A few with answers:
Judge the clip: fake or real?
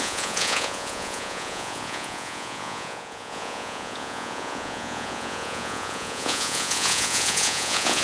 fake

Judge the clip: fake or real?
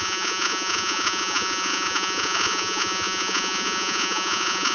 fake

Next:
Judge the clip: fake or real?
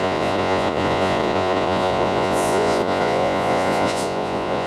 fake